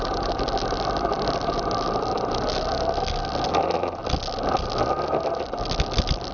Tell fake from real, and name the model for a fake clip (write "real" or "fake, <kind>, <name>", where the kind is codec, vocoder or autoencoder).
real